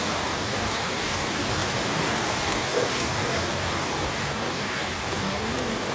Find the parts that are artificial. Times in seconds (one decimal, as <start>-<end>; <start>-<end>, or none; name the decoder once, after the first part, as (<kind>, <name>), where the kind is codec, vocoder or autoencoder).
0.0-5.9 (codec, DAC)

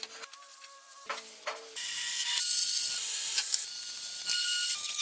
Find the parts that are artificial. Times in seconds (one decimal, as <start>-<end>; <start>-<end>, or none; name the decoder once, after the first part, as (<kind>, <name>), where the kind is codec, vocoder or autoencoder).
0.5-2.6 (vocoder, BigVGAN v2)